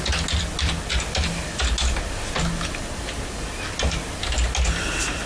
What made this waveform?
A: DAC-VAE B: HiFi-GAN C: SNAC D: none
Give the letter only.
D